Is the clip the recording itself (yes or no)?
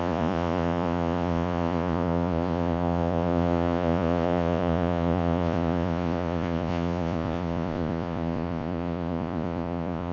no